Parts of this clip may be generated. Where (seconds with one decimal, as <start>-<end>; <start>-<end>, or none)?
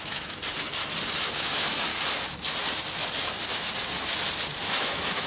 0.0-0.4; 1.3-1.9; 4.6-5.3